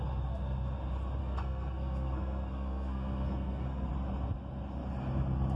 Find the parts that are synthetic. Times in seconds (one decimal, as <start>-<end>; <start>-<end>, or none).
1.2-3.9